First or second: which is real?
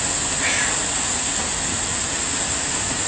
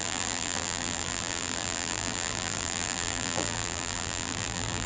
first